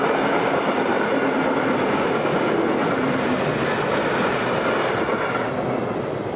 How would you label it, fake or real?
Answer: real